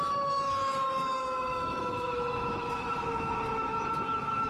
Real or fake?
fake